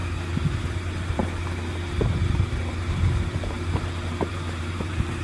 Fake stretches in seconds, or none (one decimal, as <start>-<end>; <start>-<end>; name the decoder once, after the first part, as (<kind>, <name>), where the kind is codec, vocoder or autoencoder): 0.6-1.2 (vocoder, BigVGAN v2); 4.3-5.2